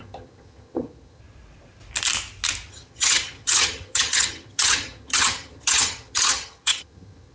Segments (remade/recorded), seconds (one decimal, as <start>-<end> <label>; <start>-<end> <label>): 0.0-1.2 remade; 1.2-2.7 recorded; 2.7-7.3 remade